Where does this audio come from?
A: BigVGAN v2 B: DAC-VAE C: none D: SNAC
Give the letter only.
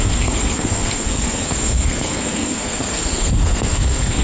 D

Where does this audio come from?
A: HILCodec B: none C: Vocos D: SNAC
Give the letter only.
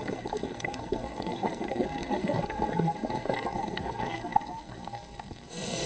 D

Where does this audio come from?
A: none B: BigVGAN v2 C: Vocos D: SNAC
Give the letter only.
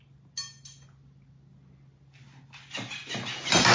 A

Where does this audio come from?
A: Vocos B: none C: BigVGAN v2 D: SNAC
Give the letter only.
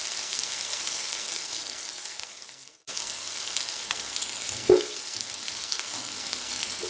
D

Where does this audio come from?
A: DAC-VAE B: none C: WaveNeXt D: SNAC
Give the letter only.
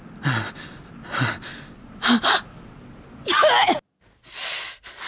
B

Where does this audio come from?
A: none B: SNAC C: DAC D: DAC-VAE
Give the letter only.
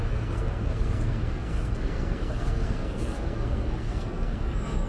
B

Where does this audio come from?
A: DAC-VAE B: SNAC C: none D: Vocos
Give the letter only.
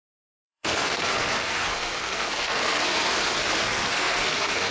B